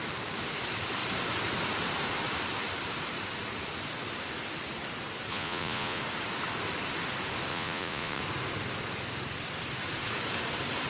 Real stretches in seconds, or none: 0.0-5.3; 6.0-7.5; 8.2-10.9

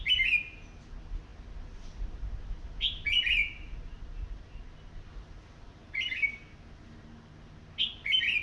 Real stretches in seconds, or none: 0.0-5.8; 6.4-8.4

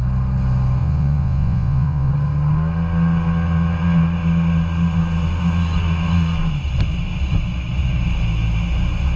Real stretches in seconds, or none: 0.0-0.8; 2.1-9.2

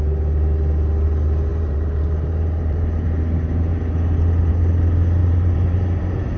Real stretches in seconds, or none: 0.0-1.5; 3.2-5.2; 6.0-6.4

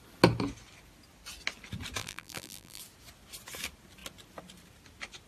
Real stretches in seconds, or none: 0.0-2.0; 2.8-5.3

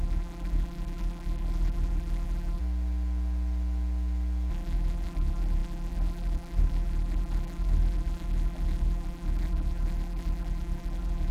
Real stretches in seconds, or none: 2.6-4.5